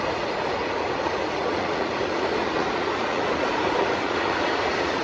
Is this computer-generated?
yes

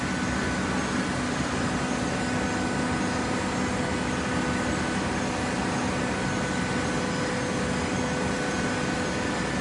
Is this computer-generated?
no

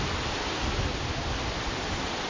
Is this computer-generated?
no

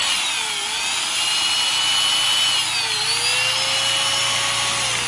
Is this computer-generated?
no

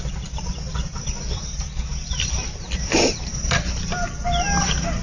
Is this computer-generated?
no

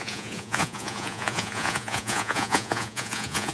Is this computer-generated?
yes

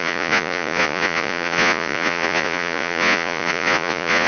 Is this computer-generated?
yes